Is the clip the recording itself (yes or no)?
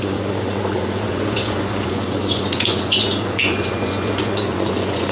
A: no